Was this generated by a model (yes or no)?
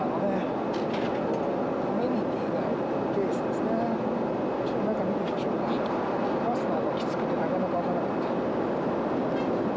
no